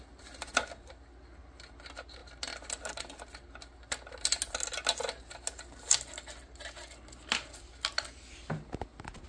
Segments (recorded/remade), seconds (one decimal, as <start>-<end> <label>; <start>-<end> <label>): 0.0-9.3 recorded

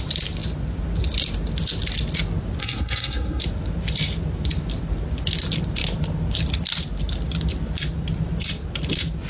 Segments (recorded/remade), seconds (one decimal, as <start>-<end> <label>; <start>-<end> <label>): 0.0-2.6 recorded; 2.6-3.4 remade; 3.4-9.3 recorded

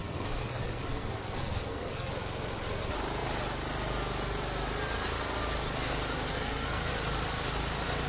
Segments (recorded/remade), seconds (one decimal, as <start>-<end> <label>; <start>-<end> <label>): 0.0-2.1 remade; 2.1-6.3 recorded; 6.3-6.9 remade; 6.9-8.1 recorded

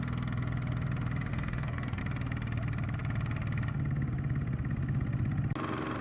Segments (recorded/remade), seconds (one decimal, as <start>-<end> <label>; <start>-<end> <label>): 0.0-1.3 recorded; 1.3-2.0 remade; 2.0-6.0 recorded